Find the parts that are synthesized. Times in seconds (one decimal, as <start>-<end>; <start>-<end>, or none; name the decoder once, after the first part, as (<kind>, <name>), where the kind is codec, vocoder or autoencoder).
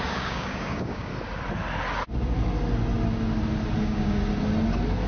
0.0-1.1 (codec, DAC); 3.8-4.2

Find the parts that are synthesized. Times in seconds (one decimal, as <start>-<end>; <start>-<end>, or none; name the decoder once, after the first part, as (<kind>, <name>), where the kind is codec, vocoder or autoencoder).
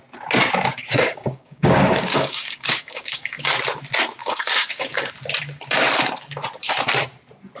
0.7-3.5 (codec, DAC); 4.2-5.1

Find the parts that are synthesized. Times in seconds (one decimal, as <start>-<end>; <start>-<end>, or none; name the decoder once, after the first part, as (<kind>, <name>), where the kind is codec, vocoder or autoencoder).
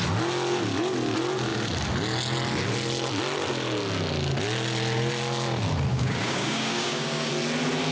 5.9-7.3 (codec, DAC)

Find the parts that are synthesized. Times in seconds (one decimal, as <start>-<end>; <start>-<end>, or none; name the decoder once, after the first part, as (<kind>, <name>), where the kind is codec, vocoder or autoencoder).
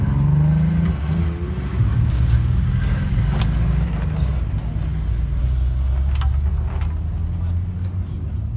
1.7-3.4 (codec, DAC)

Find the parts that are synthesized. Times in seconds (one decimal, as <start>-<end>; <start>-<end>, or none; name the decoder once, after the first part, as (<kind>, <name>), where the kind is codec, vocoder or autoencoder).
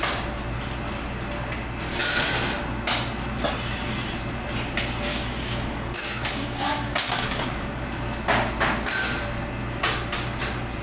5.1-7.8 (codec, DAC)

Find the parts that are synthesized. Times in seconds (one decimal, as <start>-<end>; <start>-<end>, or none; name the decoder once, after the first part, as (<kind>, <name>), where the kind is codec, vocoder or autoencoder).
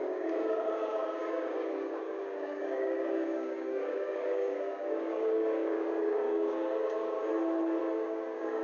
0.0-7.3 (codec, DAC); 7.8-8.6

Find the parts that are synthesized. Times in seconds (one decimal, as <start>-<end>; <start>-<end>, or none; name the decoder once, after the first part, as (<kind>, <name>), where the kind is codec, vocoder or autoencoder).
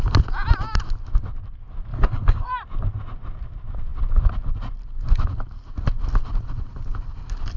1.9-2.5 (codec, DAC)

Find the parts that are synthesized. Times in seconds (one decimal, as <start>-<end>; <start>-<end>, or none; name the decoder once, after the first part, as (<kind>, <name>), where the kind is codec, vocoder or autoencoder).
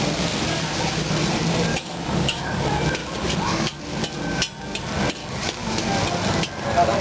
1.7-2.6 (codec, DAC); 3.0-3.8; 5.2-5.9